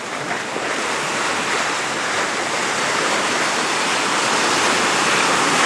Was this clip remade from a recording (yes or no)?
no